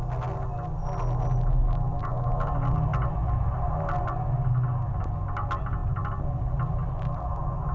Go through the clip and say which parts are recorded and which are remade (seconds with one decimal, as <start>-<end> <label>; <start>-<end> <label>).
0.0-7.7 recorded